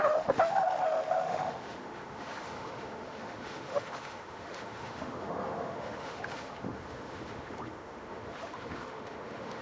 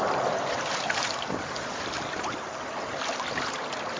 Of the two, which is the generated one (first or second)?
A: first